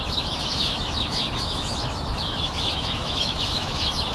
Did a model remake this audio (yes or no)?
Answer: yes